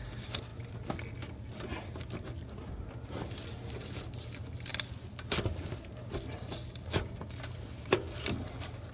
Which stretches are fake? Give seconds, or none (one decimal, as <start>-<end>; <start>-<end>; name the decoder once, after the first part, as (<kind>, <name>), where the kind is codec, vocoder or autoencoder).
none